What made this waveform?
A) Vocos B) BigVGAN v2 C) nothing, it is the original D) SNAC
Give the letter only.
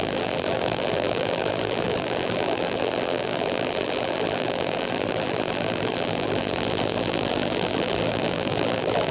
B